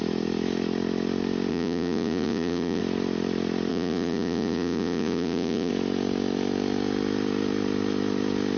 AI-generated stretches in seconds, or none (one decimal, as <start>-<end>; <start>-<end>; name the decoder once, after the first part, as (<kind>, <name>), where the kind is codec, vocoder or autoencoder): 1.5-2.8 (vocoder, Vocos); 3.7-5.7